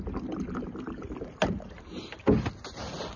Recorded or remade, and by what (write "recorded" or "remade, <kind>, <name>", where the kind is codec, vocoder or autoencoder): recorded